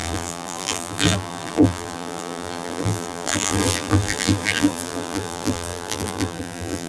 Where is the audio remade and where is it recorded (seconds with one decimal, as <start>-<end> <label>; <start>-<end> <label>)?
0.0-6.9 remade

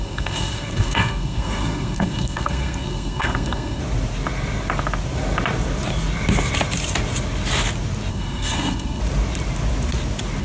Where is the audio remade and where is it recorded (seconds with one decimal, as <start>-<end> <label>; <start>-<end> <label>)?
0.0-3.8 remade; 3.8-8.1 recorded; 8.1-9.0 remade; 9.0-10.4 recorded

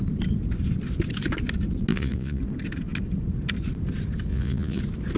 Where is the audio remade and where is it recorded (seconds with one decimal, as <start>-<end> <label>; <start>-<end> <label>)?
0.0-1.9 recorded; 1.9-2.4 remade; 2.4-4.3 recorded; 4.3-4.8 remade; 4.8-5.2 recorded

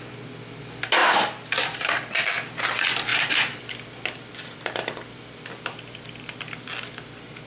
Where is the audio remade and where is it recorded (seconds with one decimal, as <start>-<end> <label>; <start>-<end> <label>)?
0.0-1.0 recorded; 1.0-1.9 remade; 1.9-3.1 recorded; 3.1-3.6 remade; 3.6-4.3 recorded; 4.3-4.9 remade; 4.9-7.5 recorded